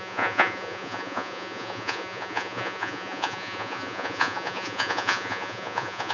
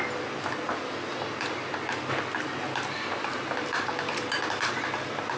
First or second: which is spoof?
first